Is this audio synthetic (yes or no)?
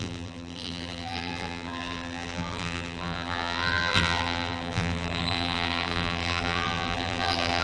yes